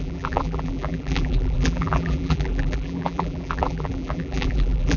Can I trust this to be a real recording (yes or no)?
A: no